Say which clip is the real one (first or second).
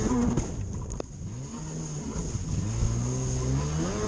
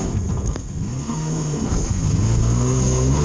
first